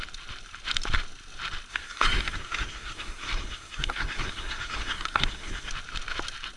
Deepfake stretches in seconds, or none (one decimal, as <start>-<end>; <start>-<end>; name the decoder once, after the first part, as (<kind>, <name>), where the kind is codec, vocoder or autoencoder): 1.7-5.7 (codec, SNAC)